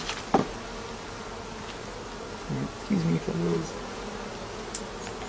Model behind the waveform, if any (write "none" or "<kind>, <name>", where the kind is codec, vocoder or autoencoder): none